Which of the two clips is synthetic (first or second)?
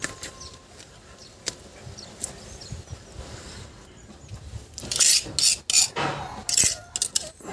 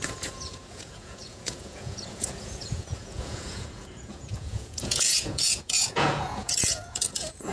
second